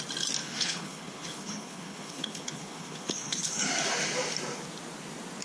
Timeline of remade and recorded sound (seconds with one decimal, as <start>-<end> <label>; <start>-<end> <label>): 0.0-0.4 recorded; 0.4-3.6 remade; 3.6-5.4 recorded